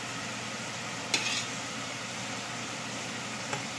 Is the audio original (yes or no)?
yes